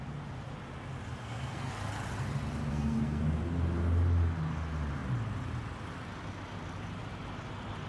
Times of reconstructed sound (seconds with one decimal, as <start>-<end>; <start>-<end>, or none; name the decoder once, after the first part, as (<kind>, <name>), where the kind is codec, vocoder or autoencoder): 1.2-1.7 (codec, SNAC); 2.7-3.2